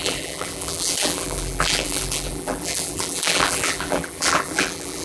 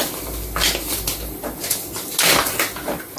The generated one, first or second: first